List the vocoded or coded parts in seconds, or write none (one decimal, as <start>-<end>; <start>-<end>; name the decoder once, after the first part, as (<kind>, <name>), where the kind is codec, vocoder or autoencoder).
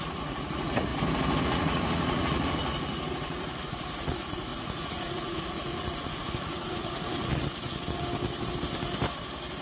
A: 0.0-0.9 (vocoder, Vocos); 1.4-7.3